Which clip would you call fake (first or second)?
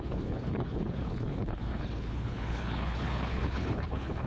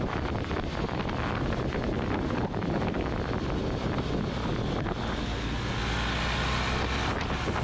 first